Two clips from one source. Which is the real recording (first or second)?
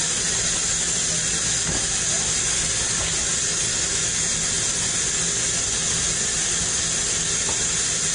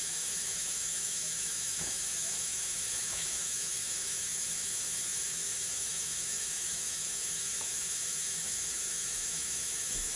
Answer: first